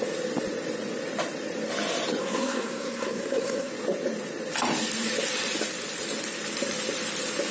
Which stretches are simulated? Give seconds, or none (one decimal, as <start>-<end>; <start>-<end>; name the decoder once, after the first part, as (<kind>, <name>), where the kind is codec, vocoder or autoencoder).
2.2-3.7 (codec, SNAC)